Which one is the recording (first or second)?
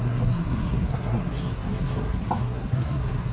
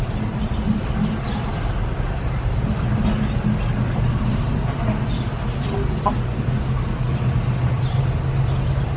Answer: second